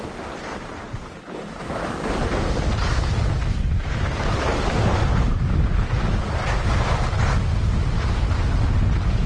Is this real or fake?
real